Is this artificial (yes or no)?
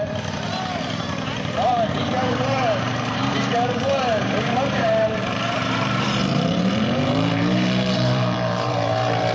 yes